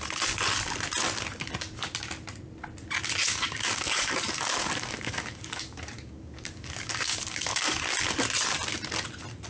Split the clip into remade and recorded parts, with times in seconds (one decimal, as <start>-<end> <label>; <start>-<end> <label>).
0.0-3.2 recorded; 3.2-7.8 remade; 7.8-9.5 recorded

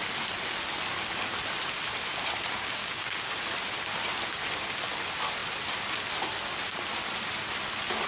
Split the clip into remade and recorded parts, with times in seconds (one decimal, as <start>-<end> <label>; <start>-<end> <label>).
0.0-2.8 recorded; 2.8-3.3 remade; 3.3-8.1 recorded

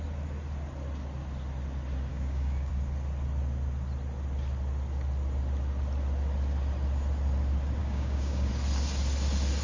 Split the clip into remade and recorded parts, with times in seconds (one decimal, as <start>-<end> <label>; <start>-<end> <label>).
0.0-2.1 recorded; 2.1-2.7 remade; 2.7-7.8 recorded; 7.8-8.5 remade; 8.5-9.6 recorded

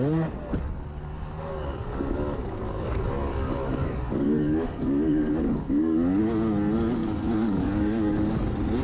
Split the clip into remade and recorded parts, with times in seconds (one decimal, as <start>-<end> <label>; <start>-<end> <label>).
0.0-1.8 recorded; 1.8-6.2 remade; 6.2-7.0 recorded; 7.0-8.3 remade; 8.3-8.8 recorded

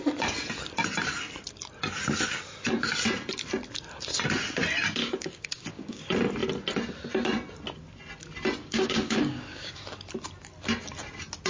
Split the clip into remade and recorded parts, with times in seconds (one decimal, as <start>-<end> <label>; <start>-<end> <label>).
0.0-5.0 recorded; 5.0-6.0 remade; 6.0-8.6 recorded; 8.6-9.8 remade; 9.8-11.5 recorded